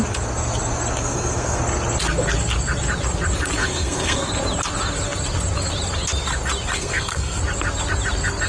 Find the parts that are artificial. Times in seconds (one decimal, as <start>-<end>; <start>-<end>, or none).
1.0-1.6; 3.6-4.3; 6.8-7.4